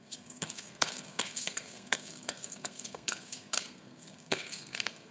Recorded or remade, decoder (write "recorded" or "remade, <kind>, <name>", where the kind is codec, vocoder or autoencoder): remade, codec, SNAC